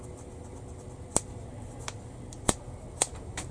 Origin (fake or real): real